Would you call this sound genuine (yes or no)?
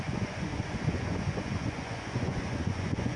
no